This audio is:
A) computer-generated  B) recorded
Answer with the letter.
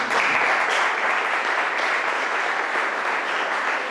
B